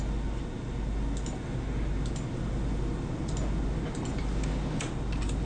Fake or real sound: real